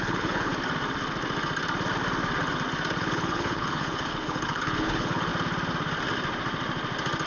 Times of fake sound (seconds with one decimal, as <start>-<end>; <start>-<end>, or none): 0.0-0.5; 3.0-5.3